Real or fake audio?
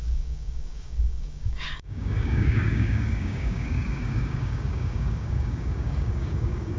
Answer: fake